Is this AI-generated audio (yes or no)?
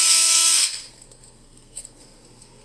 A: yes